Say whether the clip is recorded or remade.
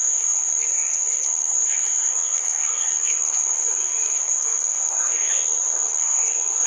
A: remade